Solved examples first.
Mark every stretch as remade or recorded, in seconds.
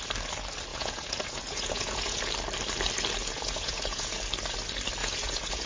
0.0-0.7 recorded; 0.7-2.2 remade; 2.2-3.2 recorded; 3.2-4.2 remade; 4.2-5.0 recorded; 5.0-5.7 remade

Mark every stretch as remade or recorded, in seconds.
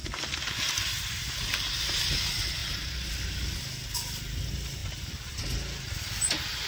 0.0-6.7 recorded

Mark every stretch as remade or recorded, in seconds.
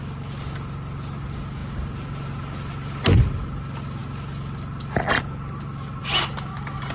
0.0-6.9 recorded